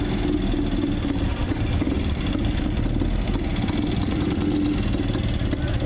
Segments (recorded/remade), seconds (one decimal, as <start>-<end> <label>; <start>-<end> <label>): 0.0-1.3 recorded; 1.3-1.9 remade; 1.9-5.9 recorded